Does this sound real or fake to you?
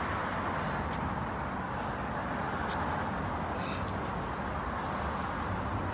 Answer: real